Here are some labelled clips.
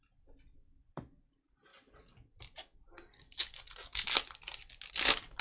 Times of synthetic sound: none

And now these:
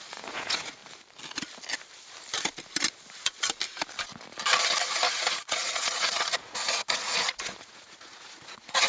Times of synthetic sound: 0.0-0.8 (vocoder, Vocos); 4.9-8.9

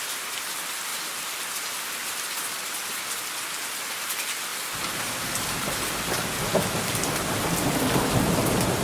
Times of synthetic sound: none